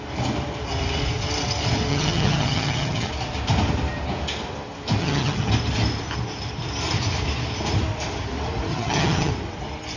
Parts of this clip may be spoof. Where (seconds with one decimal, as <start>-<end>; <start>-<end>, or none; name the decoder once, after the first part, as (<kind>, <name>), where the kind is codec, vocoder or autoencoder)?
1.9-3.1 (vocoder, HiFi-GAN); 5.0-5.5; 8.7-9.3